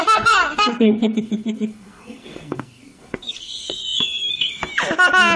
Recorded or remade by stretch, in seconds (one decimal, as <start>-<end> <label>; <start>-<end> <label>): 0.0-4.6 remade; 4.6-5.4 recorded